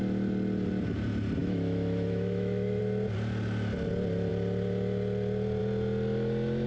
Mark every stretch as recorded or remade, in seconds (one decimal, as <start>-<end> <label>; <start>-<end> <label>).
0.0-1.4 recorded; 1.4-2.8 remade; 2.8-6.7 recorded